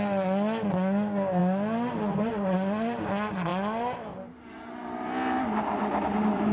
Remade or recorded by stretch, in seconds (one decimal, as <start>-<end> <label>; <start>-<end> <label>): 0.0-6.5 recorded